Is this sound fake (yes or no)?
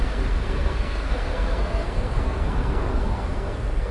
yes